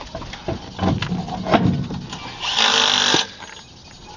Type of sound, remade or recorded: recorded